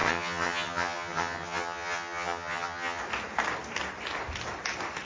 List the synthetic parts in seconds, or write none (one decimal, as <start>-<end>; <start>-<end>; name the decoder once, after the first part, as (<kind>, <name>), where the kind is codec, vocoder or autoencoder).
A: 0.0-3.0 (vocoder, HiFi-GAN)